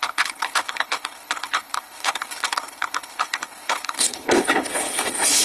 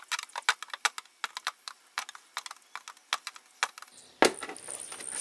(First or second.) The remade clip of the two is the first